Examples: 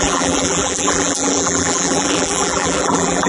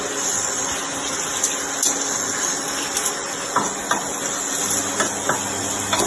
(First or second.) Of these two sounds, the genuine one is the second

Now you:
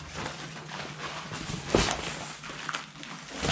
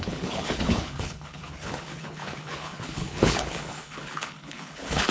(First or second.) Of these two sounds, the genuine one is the first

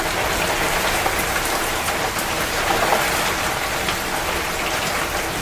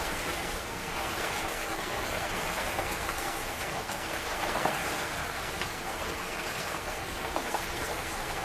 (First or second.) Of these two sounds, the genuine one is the first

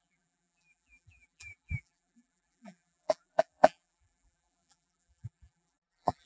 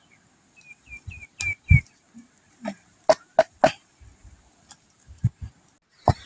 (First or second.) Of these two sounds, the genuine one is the second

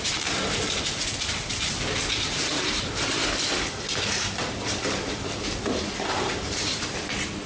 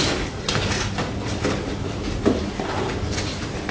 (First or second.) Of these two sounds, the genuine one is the second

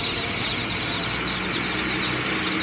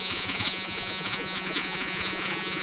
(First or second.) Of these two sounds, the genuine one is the first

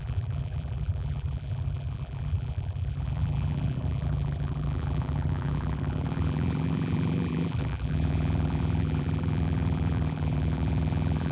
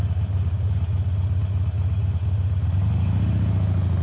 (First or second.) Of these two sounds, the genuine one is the second